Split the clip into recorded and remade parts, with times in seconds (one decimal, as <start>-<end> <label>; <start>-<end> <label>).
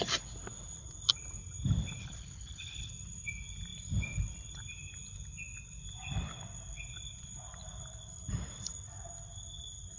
0.0-2.0 recorded; 2.0-2.9 remade; 2.9-10.0 recorded